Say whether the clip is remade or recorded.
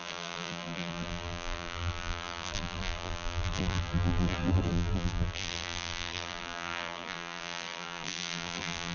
remade